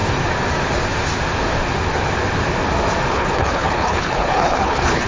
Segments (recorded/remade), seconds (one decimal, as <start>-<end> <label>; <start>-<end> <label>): 0.0-3.1 recorded; 3.1-5.1 remade